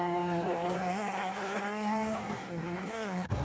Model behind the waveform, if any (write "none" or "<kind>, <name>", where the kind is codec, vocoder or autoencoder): codec, SNAC